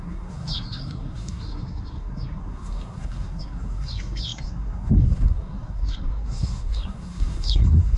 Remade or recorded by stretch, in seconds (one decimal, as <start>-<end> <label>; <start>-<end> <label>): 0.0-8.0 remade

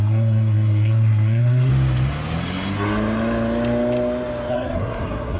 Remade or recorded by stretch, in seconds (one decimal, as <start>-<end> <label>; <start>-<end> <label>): 0.0-1.7 remade; 1.7-4.5 recorded; 4.5-5.4 remade

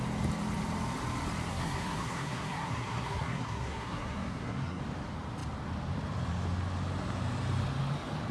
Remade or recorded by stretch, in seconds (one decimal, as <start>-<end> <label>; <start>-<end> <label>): 0.0-1.5 recorded; 1.5-4.8 remade; 4.8-8.3 recorded

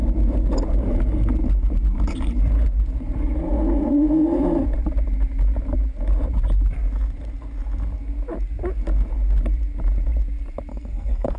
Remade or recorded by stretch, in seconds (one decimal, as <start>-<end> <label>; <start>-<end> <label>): 0.0-10.7 recorded; 10.7-11.4 remade

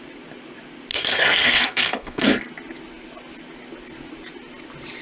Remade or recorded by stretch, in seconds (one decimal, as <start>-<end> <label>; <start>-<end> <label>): 0.0-0.9 recorded; 0.9-2.5 remade; 2.5-5.0 recorded